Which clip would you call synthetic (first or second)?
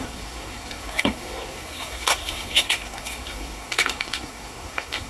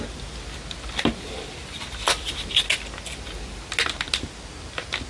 first